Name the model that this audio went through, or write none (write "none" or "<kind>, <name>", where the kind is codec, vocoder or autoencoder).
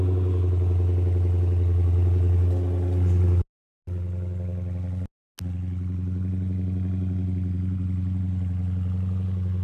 none